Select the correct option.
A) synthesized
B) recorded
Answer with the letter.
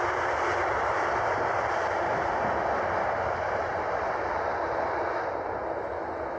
B